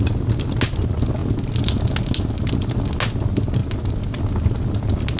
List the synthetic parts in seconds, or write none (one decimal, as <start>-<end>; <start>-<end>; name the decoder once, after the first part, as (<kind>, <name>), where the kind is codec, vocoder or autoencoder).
none